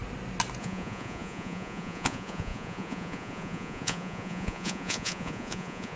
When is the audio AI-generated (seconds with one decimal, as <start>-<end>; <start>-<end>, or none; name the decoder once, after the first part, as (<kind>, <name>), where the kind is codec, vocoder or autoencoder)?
0.6-6.0 (vocoder, Vocos)